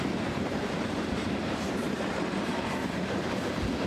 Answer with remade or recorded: remade